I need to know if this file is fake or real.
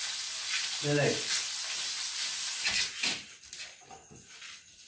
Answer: real